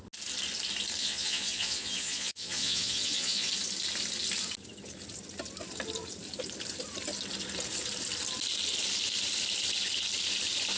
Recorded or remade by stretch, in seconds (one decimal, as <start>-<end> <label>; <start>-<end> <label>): 0.0-1.0 recorded; 1.0-3.5 remade; 3.5-10.8 recorded